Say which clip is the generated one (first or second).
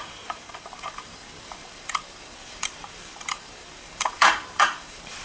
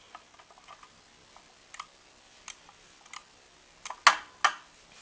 first